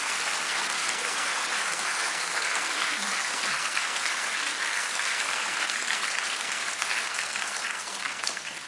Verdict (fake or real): fake